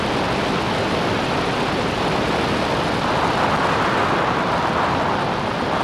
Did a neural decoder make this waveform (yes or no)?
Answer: no